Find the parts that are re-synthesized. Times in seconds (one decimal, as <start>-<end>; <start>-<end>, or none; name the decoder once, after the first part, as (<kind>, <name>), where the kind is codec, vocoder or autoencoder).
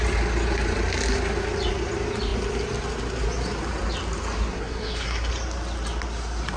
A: 4.5-5.3 (codec, SNAC)